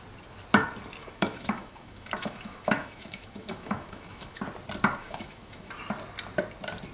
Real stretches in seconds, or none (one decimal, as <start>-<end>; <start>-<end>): 0.0-1.0; 4.4-5.0; 5.7-6.9